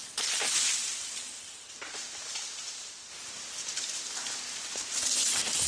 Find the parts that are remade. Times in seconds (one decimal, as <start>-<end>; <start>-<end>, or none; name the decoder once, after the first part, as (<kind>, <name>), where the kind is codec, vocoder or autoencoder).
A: none